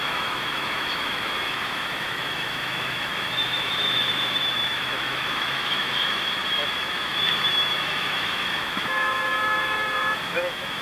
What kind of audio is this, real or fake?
fake